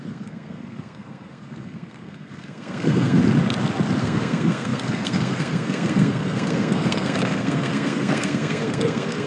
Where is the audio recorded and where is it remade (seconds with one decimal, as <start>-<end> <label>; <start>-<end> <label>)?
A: 0.0-3.2 remade; 3.2-4.0 recorded; 4.0-9.3 remade